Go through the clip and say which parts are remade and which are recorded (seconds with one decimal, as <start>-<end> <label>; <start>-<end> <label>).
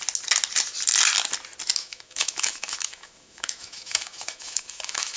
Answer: 0.0-1.8 recorded; 1.8-5.2 remade